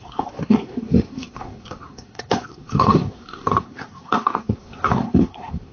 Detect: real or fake fake